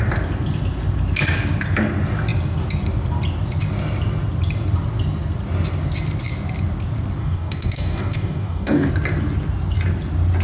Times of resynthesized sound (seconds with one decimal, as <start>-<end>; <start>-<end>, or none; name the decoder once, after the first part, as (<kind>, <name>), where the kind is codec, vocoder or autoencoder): 7.2-8.9 (codec, DAC)